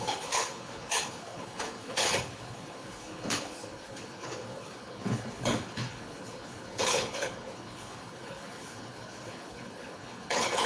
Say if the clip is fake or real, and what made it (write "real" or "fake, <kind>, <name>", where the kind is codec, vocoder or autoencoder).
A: fake, codec, HILCodec